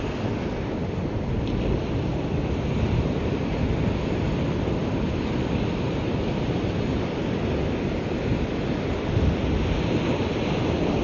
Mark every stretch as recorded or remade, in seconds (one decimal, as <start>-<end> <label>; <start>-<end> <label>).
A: 0.0-11.0 recorded